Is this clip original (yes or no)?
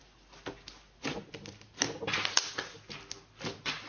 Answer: yes